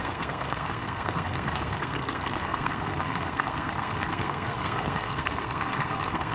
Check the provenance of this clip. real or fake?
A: fake